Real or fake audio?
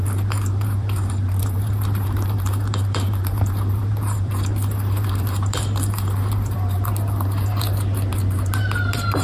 fake